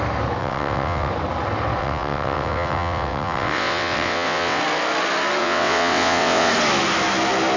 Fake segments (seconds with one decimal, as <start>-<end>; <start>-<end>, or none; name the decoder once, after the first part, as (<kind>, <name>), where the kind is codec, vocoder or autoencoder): 0.4-1.1 (vocoder, WaveNeXt); 1.8-4.6; 5.4-6.5